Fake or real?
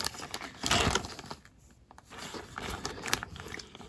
real